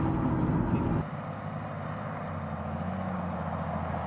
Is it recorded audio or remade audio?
recorded